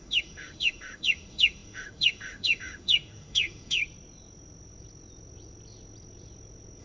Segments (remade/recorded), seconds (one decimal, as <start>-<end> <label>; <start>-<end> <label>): 0.0-3.8 remade; 3.8-6.8 recorded